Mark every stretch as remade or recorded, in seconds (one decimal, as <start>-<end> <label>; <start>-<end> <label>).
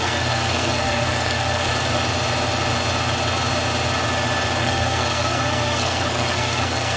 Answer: 0.0-1.7 remade; 1.7-4.6 recorded; 4.6-7.0 remade